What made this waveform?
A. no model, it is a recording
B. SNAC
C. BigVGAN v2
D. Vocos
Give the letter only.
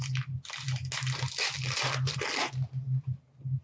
A